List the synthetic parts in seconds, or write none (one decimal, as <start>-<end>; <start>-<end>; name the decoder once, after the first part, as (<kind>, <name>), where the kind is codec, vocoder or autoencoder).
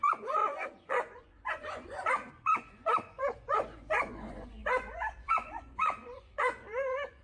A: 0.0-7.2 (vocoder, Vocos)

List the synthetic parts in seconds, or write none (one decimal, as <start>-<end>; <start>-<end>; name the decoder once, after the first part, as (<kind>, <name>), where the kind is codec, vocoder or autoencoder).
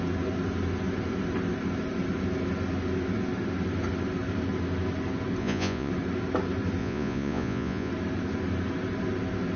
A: 5.4-5.9 (vocoder, Vocos); 6.8-7.9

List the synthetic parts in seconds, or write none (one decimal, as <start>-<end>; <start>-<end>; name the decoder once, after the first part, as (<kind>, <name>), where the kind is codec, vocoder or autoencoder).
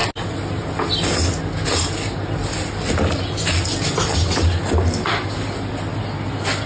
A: none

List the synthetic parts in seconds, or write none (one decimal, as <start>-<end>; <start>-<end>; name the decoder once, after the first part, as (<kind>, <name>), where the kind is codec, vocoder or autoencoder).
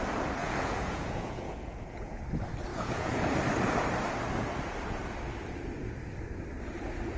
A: 0.4-2.2 (vocoder, Vocos); 2.7-3.2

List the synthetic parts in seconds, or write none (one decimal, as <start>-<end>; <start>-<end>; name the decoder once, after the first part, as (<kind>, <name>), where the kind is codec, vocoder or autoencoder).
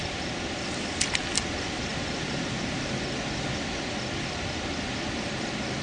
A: none